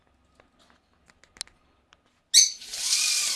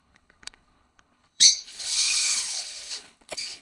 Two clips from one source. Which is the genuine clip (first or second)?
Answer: first